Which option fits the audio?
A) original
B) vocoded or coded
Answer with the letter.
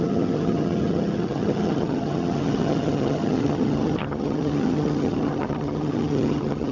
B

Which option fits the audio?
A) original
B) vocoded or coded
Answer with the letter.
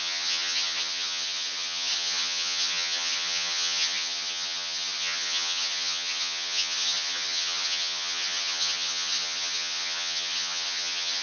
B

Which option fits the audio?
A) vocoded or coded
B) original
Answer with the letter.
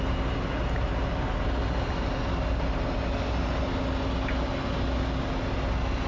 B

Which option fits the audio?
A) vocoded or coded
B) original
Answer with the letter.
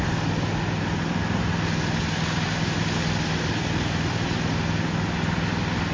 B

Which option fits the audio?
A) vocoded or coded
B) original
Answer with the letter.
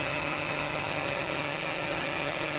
A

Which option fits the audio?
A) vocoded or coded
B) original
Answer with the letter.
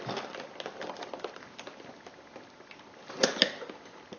B